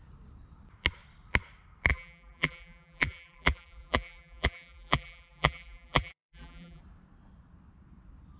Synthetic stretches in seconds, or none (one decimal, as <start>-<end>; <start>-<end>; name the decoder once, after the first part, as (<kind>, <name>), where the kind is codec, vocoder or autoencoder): 1.9-6.8 (vocoder, BigVGAN v2)